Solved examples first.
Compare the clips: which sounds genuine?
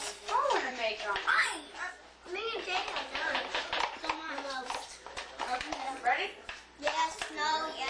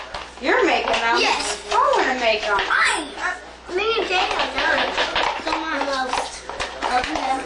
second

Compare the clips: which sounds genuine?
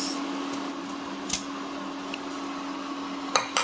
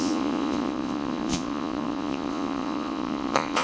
first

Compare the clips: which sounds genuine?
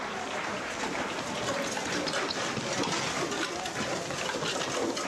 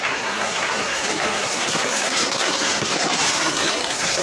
first